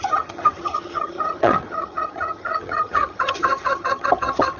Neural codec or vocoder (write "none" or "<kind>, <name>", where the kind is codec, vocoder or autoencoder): vocoder, HiFi-GAN